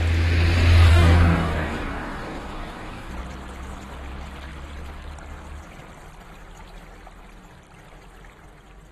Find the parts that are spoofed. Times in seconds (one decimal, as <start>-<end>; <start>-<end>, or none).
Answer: 0.9-3.1